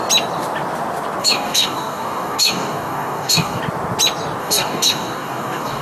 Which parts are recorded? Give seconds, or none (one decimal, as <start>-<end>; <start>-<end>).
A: 0.0-1.2; 3.6-4.4

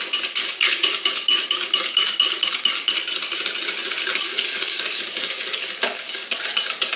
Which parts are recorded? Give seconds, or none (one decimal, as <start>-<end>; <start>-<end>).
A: 0.0-0.4; 2.9-4.1

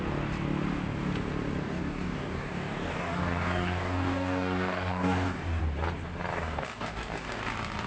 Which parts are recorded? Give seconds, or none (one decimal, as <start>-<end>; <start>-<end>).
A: 0.0-1.6; 5.6-6.3; 7.4-7.9